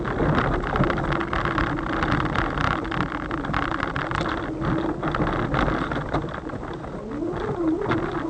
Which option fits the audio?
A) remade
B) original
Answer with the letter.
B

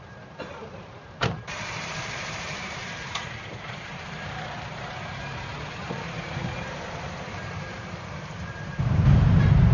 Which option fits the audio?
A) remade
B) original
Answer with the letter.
A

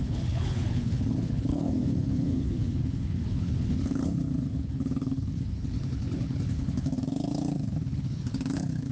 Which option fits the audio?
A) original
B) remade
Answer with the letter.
B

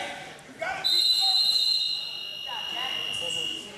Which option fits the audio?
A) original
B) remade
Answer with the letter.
A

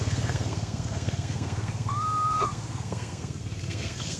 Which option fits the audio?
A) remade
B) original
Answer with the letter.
A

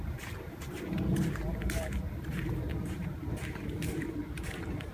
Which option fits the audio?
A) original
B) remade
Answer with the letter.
B